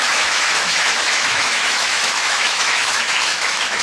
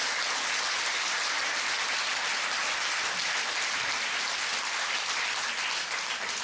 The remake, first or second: first